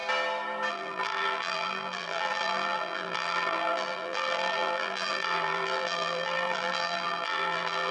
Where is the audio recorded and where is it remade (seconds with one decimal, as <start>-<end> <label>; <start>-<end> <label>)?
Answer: 0.0-0.7 recorded; 0.7-7.9 remade